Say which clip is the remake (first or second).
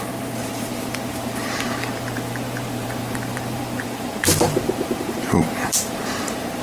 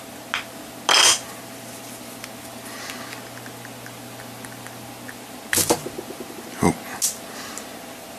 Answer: first